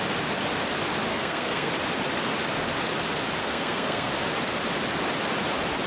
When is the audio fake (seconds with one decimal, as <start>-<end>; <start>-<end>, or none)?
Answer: 1.1-1.7; 3.4-4.1